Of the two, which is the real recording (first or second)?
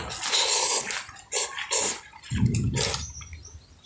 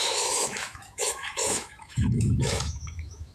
first